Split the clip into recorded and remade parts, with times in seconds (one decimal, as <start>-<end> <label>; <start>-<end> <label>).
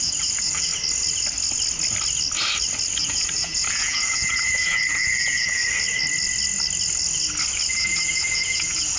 0.0-0.7 remade; 0.7-3.0 recorded; 3.0-5.6 remade; 5.6-7.7 recorded; 7.7-9.0 remade